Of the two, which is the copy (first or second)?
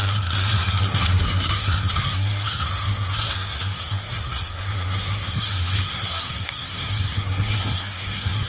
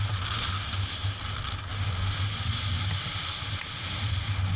first